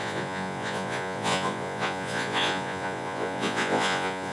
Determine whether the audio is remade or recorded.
remade